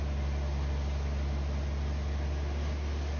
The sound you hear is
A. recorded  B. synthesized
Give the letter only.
A